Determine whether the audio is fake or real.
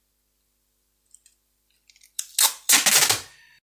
real